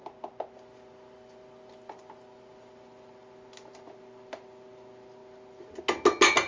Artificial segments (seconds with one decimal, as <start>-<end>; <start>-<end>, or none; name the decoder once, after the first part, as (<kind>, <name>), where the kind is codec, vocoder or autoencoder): none